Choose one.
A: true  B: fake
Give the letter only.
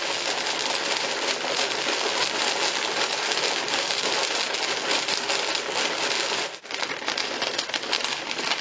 A